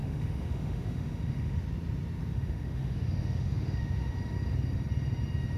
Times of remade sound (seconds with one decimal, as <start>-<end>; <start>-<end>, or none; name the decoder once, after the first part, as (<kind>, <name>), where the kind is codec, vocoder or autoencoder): 0.0-1.6 (autoencoder, DAC-VAE); 2.3-4.1